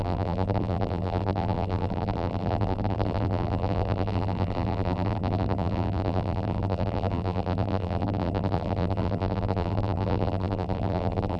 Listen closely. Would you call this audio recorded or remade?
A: remade